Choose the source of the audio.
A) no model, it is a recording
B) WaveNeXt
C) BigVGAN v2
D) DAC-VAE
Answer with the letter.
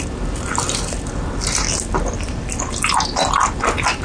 A